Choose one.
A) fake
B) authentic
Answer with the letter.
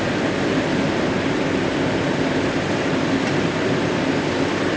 B